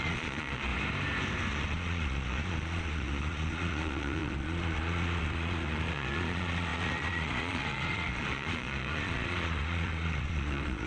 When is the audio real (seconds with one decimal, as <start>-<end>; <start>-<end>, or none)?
0.7-1.5